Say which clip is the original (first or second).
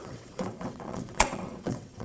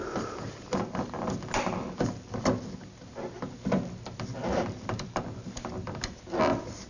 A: second